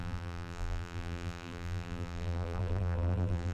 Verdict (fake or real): fake